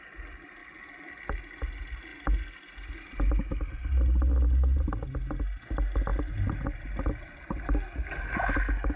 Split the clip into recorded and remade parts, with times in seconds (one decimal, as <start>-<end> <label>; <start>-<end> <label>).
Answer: 0.0-9.0 recorded